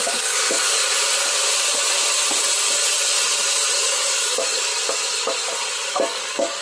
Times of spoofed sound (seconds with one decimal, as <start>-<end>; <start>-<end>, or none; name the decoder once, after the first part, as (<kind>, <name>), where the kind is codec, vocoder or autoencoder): 0.0-0.8 (codec, DAC); 3.8-4.7; 5.9-6.6